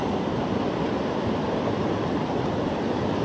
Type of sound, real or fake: fake